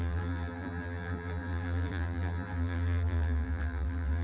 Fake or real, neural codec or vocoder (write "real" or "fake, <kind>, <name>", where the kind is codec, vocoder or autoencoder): fake, vocoder, BigVGAN v2